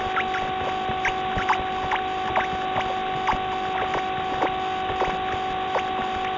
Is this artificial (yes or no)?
no